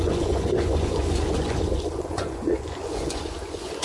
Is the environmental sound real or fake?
fake